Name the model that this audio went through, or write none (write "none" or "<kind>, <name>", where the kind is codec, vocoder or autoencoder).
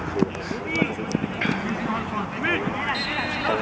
none